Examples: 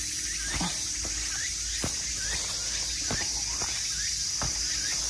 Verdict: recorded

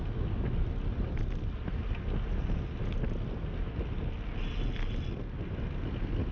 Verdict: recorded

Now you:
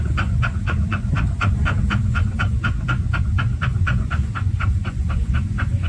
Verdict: remade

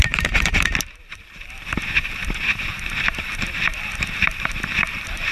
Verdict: remade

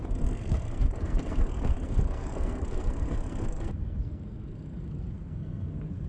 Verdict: remade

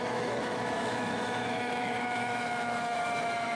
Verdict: remade